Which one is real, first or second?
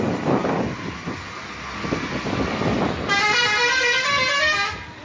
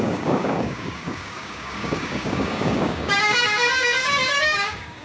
first